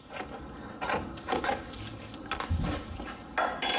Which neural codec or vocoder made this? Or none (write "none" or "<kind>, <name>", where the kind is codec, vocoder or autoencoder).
none